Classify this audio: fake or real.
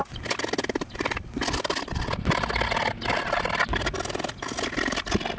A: real